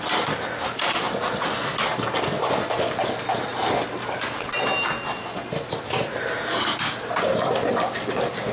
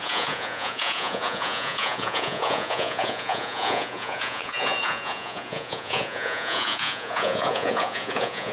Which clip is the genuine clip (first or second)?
first